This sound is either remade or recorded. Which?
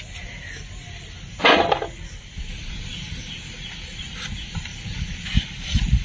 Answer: recorded